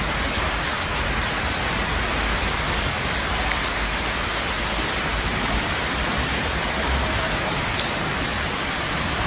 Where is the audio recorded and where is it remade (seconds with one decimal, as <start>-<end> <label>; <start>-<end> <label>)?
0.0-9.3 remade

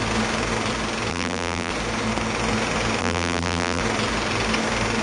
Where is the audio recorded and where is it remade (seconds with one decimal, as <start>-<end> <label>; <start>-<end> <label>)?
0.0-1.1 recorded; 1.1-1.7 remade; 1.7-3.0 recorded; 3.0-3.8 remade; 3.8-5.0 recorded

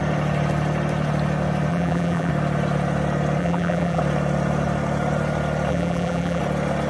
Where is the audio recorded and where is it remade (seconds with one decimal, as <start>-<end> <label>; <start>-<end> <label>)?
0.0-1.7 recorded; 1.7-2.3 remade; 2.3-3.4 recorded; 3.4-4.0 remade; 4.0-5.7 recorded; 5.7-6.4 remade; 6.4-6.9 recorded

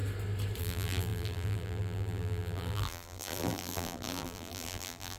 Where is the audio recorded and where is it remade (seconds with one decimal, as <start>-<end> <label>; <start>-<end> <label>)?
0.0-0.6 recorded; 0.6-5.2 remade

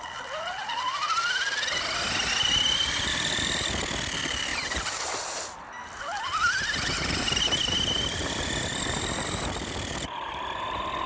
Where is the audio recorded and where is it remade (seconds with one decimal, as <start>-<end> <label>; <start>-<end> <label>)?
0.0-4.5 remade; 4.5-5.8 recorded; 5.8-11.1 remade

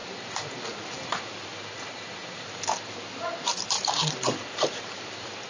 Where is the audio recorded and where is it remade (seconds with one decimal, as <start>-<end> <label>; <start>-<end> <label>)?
0.0-1.2 remade; 1.2-2.2 recorded; 2.2-2.8 remade; 2.8-4.5 recorded; 4.5-5.1 remade; 5.1-5.5 recorded

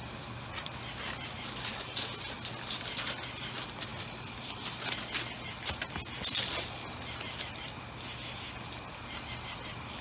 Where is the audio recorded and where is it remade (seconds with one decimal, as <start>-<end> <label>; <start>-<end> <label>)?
0.0-10.0 recorded

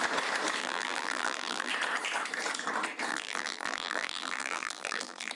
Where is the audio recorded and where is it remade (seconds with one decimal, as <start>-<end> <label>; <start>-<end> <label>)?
0.0-0.6 recorded; 0.6-1.7 remade; 1.7-3.1 recorded; 3.1-5.3 remade